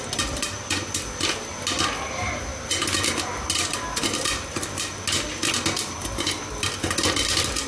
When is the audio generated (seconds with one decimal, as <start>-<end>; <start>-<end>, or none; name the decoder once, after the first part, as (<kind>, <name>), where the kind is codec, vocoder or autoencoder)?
none